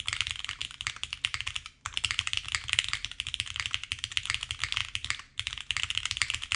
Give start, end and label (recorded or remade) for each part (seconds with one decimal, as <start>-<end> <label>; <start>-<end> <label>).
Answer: 0.0-6.6 recorded